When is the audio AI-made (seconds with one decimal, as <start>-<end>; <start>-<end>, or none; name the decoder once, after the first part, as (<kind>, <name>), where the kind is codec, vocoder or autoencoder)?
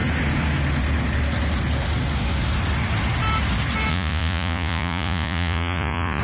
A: 3.9-6.2 (vocoder, Vocos)